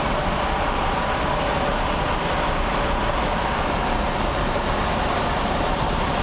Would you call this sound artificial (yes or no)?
no